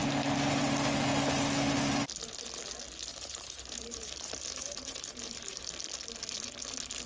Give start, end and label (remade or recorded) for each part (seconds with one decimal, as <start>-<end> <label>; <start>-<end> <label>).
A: 0.0-3.1 recorded; 3.1-5.7 remade; 5.7-7.1 recorded